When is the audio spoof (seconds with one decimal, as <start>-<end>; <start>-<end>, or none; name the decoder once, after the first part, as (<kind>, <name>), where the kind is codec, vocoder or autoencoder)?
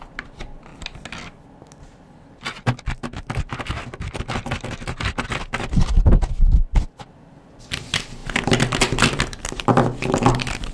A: none